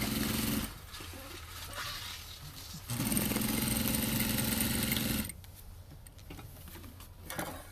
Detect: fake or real real